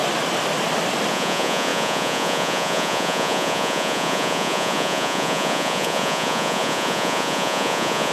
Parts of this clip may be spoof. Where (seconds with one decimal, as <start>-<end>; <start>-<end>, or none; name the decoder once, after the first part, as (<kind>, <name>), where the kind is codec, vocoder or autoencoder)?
1.1-8.1 (vocoder, Vocos)